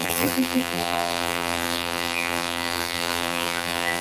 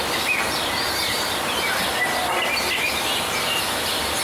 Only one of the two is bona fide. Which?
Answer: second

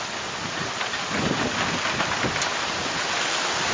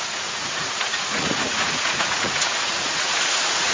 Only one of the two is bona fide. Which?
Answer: first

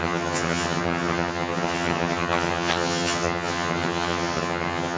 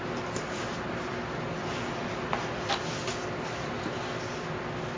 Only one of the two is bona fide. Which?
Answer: second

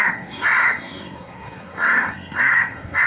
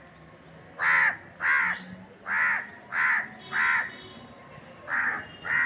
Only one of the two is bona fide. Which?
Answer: second